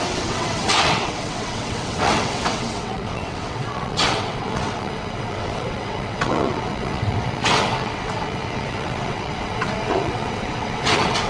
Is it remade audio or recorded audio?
remade